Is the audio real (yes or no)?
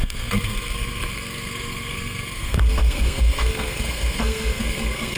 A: no